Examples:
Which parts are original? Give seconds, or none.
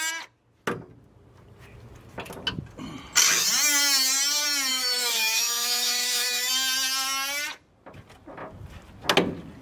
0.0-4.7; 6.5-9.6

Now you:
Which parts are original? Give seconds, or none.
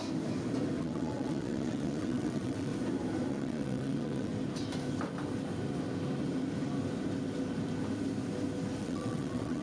0.0-0.8; 2.7-3.3; 4.3-8.8